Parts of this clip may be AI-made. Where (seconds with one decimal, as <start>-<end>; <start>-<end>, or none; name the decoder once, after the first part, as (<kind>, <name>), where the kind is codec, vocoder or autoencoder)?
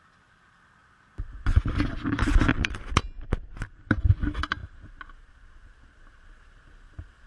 none